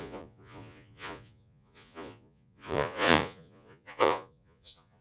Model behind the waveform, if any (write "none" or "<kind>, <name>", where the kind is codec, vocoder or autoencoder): vocoder, Vocos